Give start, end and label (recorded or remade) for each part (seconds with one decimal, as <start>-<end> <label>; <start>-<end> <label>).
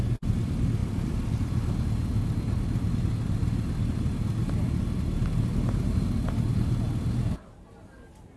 0.0-0.8 recorded; 0.8-1.3 remade; 1.3-8.4 recorded